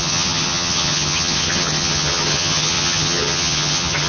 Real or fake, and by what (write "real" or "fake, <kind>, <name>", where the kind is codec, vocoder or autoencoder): fake, vocoder, HiFi-GAN